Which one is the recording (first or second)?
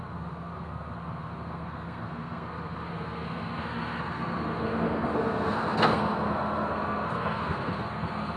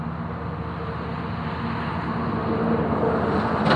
second